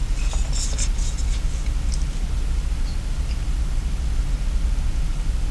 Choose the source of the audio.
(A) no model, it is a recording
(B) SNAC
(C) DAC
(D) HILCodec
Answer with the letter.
A